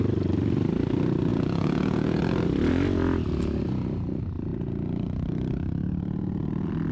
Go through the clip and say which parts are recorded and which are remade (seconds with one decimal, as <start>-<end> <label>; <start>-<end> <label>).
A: 0.0-1.3 recorded; 1.3-2.2 remade; 2.2-6.9 recorded

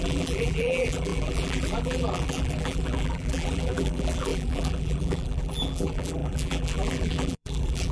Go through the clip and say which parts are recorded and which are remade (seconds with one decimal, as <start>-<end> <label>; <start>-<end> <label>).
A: 0.0-7.9 remade

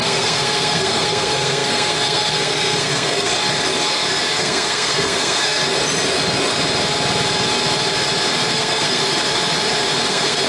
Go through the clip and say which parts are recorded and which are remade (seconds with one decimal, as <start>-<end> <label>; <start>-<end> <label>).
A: 0.0-3.3 remade; 3.3-4.4 recorded; 4.4-5.6 remade; 5.6-8.5 recorded; 8.5-9.0 remade; 9.0-10.1 recorded; 10.1-10.5 remade